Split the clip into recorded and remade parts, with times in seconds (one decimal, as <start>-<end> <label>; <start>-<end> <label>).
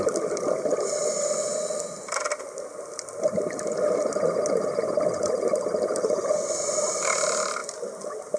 0.0-8.4 recorded